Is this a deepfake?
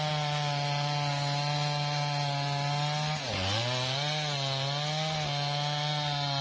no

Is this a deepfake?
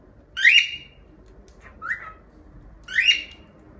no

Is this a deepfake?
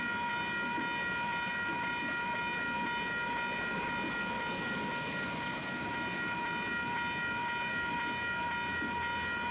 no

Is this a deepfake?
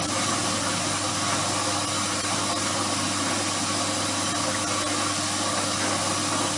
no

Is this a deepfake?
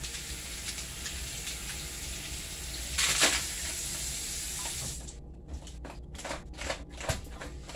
no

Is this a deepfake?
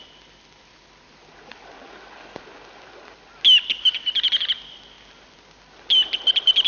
no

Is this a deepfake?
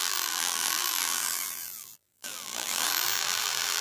yes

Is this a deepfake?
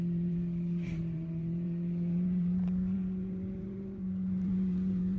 yes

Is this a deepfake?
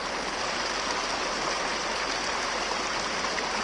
no